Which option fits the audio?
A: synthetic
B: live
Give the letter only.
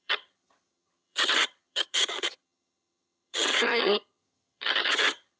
A